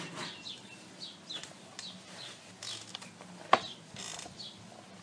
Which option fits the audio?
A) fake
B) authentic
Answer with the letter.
B